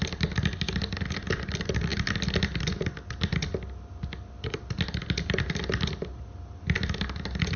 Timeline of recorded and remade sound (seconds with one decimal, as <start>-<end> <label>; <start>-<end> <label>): 0.0-7.6 recorded